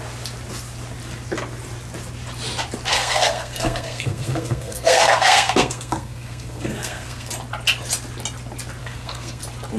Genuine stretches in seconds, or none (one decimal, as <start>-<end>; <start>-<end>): 0.0-2.9; 7.3-8.8; 9.4-9.8